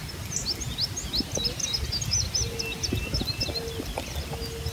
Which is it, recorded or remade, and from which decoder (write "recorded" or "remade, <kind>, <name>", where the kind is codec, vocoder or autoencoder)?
recorded